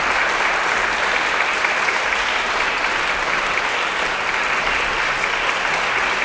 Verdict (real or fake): real